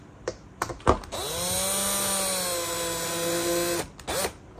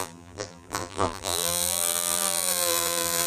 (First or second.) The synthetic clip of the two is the second